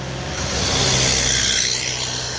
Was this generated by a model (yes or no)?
no